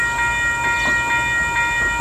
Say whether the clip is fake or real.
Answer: real